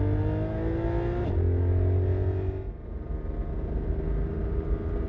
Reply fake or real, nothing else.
real